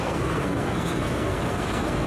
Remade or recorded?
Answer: remade